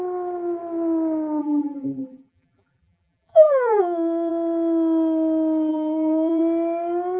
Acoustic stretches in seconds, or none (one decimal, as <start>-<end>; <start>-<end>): 0.0-1.4; 4.3-5.7; 6.4-7.2